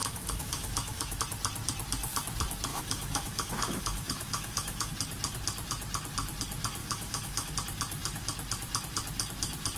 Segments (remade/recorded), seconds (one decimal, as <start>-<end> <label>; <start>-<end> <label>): 0.0-1.2 remade; 1.2-2.7 recorded; 2.7-4.9 remade; 4.9-6.8 recorded; 6.8-7.5 remade; 7.5-9.8 recorded